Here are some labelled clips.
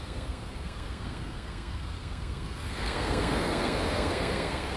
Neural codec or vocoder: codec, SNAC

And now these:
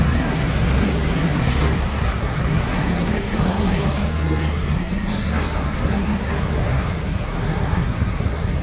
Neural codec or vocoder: codec, SNAC